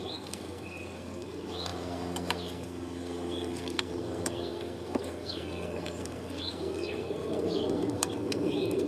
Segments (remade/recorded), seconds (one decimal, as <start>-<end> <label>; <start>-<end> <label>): 0.0-8.9 remade